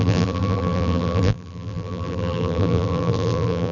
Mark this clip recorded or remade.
remade